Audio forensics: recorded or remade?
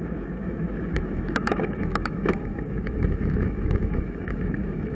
remade